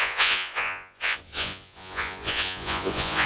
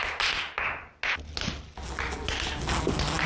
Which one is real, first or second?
second